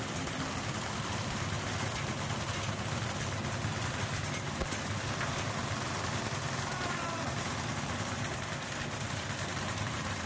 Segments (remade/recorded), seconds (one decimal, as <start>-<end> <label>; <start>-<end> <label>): 0.0-9.5 recorded; 9.5-10.3 remade